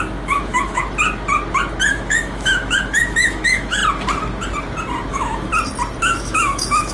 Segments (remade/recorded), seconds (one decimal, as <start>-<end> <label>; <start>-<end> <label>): 0.0-0.8 remade; 0.8-1.9 recorded; 1.9-3.8 remade; 3.8-5.1 recorded; 5.1-5.5 remade; 5.5-6.0 recorded; 6.0-6.9 remade